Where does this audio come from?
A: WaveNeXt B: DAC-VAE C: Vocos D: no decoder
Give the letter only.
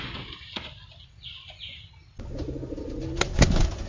D